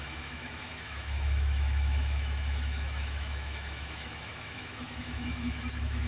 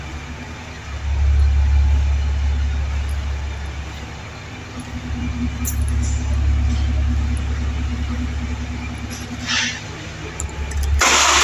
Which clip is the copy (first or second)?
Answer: first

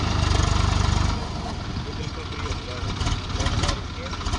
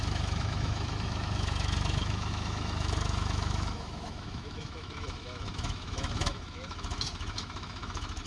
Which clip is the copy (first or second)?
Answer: second